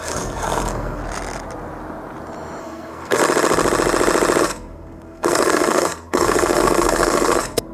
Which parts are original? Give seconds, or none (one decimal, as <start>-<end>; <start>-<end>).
1.0-2.6; 3.2-4.4